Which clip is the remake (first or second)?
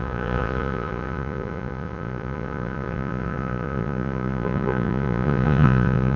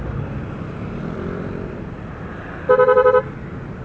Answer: first